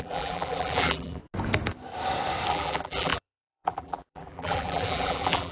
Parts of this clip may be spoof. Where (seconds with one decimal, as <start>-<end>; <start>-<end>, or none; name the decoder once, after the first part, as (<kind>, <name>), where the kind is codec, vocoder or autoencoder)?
0.0-1.2 (vocoder, BigVGAN v2); 2.5-5.5